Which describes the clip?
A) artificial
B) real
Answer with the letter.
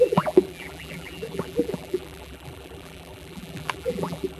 A